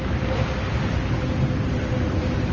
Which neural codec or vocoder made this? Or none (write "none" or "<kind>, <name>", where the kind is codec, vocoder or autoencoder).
none